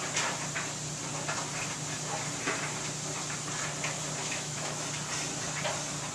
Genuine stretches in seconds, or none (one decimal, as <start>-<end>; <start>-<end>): 0.0-4.2; 4.8-6.1